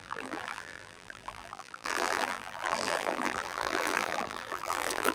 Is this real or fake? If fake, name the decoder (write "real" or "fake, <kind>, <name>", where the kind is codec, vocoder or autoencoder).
fake, vocoder, BigVGAN v2